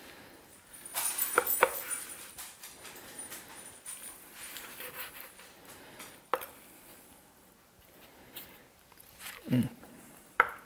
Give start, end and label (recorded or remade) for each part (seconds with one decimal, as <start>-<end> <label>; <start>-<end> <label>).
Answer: 0.0-0.9 recorded; 0.9-6.1 remade; 6.1-6.9 recorded; 6.9-10.0 remade; 10.0-10.6 recorded